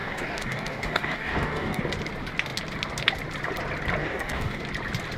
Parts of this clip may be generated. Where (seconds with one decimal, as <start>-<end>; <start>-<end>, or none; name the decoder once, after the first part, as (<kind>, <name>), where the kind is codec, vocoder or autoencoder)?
0.0-1.8 (codec, DAC); 4.0-4.6

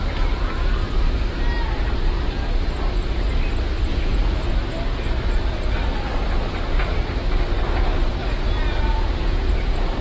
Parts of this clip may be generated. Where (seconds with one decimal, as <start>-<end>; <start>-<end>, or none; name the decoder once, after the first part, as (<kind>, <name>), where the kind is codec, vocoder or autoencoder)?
3.9-4.5 (vocoder, Vocos); 8.2-9.4

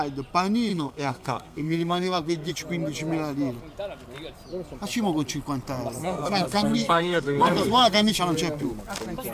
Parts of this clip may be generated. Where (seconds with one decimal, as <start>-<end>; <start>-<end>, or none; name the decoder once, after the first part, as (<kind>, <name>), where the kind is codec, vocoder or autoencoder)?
0.7-2.5 (codec, SNAC); 6.0-8.2

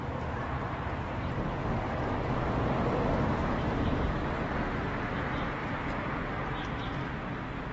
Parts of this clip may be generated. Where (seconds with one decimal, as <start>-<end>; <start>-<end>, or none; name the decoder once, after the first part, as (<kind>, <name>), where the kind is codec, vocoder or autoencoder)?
0.0-7.7 (vocoder, BigVGAN v2)

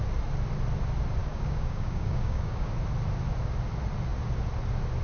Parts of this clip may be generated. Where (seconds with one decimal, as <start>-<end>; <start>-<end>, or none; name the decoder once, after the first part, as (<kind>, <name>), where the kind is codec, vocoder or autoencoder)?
1.2-2.7 (codec, DAC)